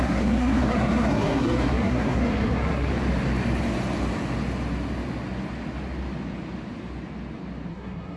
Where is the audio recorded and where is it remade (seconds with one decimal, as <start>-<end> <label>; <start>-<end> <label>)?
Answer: 0.0-2.9 remade; 2.9-7.7 recorded; 7.7-8.2 remade